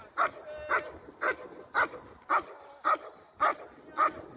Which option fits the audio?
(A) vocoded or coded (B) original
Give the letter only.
B